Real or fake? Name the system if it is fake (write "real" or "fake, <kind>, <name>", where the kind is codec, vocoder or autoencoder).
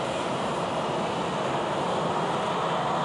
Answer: real